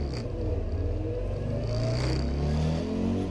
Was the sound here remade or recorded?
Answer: recorded